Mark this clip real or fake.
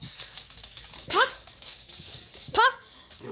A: fake